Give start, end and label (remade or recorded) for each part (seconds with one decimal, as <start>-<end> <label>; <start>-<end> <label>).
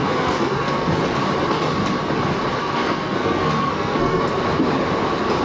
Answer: 0.0-1.0 remade; 1.0-2.6 recorded; 2.6-4.2 remade; 4.2-5.4 recorded